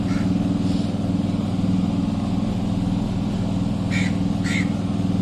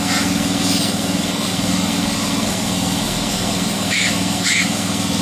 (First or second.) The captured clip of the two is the first